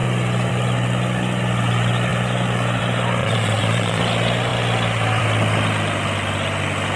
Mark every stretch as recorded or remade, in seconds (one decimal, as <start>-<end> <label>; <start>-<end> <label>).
0.0-3.2 recorded; 3.2-4.0 remade; 4.0-7.0 recorded